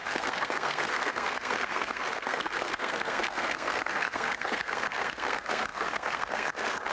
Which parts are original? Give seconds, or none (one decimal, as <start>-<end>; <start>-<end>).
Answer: none